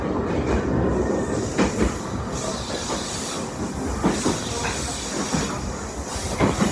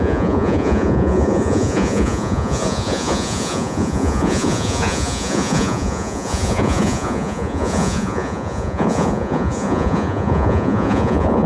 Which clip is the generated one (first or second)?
second